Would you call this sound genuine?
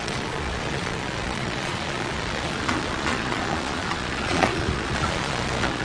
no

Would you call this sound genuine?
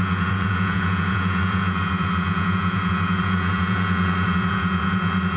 no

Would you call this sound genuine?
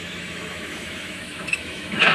no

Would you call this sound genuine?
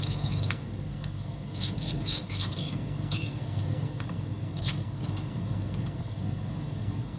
no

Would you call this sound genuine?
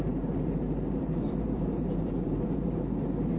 no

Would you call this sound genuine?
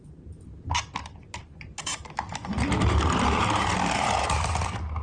no